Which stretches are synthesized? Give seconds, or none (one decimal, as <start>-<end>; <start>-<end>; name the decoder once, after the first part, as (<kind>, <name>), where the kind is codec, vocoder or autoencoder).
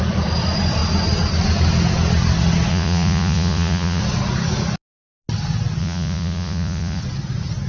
2.7-4.0 (vocoder, Vocos); 5.8-7.0